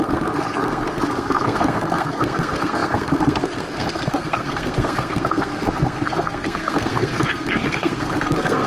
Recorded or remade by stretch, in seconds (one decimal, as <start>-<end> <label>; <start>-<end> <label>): 0.0-8.7 remade